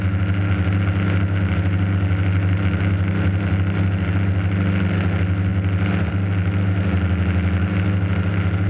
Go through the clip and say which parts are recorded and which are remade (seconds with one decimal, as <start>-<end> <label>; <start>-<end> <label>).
0.0-8.7 recorded